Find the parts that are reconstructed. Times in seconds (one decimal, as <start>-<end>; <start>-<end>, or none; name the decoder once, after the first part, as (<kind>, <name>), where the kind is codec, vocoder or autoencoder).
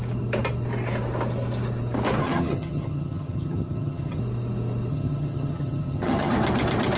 2.2-4.2 (vocoder, HiFi-GAN); 4.9-6.3